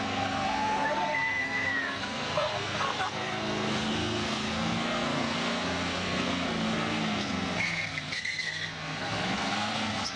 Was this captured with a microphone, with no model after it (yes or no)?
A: no